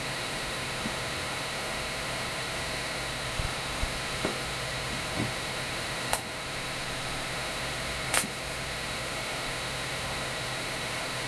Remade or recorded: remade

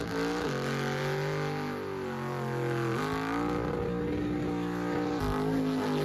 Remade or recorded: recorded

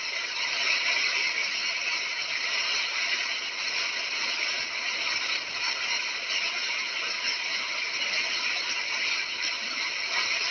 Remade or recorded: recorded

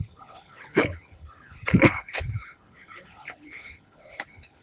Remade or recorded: remade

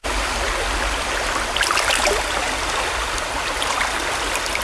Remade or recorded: recorded